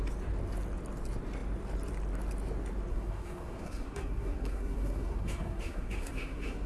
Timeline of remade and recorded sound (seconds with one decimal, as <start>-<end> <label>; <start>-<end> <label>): 0.0-2.9 recorded; 2.9-6.7 remade